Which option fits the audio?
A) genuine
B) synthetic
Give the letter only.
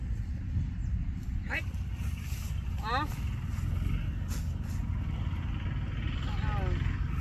A